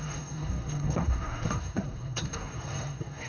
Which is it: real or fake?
fake